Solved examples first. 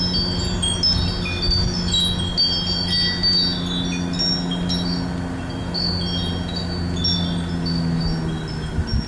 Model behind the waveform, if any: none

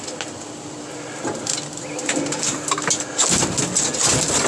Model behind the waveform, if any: none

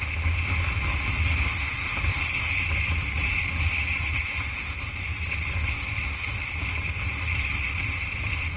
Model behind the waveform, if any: none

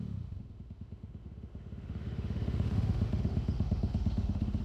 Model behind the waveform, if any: autoencoder, DAC-VAE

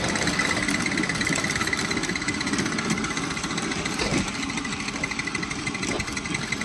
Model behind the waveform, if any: none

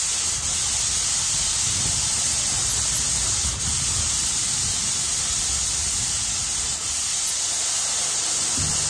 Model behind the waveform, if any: none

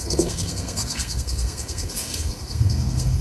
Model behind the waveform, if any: codec, SNAC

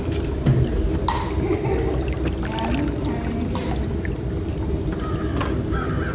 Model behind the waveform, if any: none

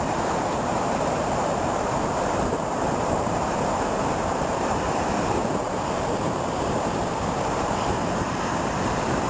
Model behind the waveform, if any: vocoder, BigVGAN v2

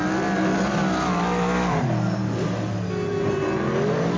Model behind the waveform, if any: none